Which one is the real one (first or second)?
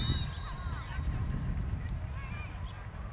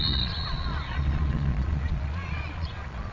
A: first